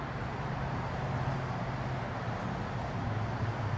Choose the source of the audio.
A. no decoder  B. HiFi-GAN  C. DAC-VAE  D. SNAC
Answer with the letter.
A